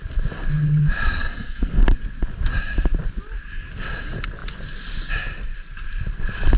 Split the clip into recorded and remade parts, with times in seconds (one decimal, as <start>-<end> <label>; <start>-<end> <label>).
0.0-1.2 recorded; 1.2-1.8 remade; 1.8-6.6 recorded